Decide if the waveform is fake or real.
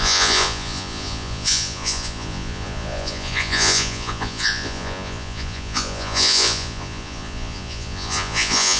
fake